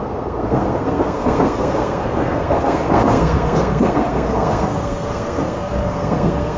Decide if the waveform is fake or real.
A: fake